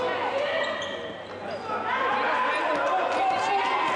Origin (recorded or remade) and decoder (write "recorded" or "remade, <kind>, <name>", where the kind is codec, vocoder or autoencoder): recorded